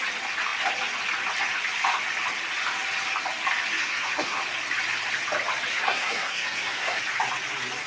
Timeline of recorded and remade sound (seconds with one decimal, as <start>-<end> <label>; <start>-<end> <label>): 0.0-3.8 recorded; 3.8-4.4 remade; 4.4-5.7 recorded; 5.7-7.0 remade; 7.0-7.9 recorded